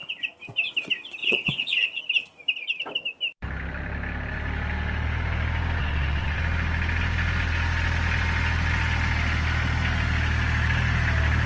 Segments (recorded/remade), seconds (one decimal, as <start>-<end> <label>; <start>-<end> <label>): 0.0-1.2 recorded; 1.2-2.0 remade; 2.0-5.8 recorded; 5.8-6.4 remade; 6.4-11.5 recorded